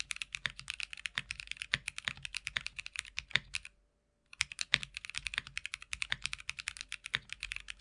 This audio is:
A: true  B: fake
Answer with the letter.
A